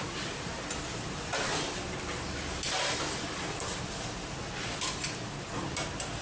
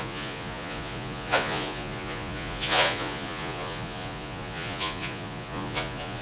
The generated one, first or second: second